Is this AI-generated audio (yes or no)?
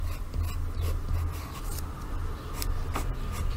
no